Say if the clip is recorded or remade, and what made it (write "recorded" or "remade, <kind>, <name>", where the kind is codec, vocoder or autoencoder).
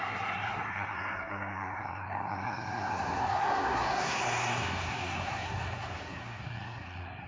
remade, codec, SNAC